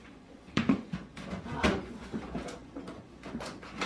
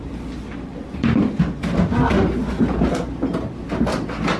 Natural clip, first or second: second